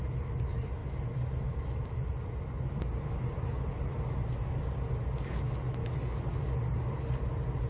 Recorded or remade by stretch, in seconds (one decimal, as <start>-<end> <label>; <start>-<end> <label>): 0.0-7.7 recorded